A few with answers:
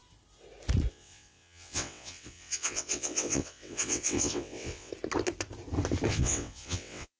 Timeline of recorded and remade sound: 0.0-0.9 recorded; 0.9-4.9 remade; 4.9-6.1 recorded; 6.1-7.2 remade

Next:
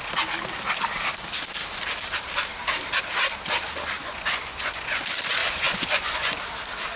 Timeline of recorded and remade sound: 0.0-4.0 recorded; 4.0-5.0 remade; 5.0-5.4 recorded; 5.4-6.4 remade; 6.4-7.0 recorded

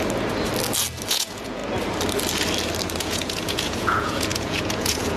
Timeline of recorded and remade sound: 0.0-1.1 recorded; 1.1-1.6 remade; 1.6-3.0 recorded; 3.0-5.2 remade

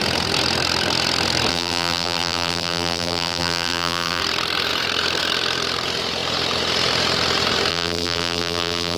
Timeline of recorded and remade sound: 0.0-1.5 recorded; 1.5-4.2 remade; 4.2-7.7 recorded; 7.7-9.0 remade

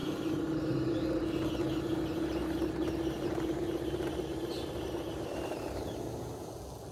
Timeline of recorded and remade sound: 0.0-0.9 remade; 0.9-2.4 recorded; 2.4-6.5 remade; 6.5-6.9 recorded

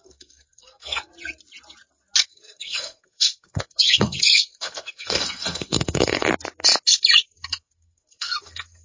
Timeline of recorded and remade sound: 0.0-1.1 remade; 1.1-2.2 recorded; 2.2-6.3 remade; 6.3-7.2 recorded; 7.2-8.8 remade

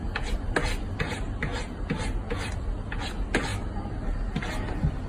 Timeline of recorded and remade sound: 0.0-0.9 recorded; 0.9-1.5 remade; 1.5-2.3 recorded; 2.3-5.1 remade